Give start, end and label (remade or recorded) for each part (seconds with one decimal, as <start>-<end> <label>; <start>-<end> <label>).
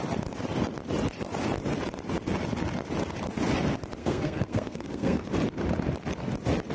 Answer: 0.0-4.0 recorded; 4.0-5.3 remade; 5.3-6.7 recorded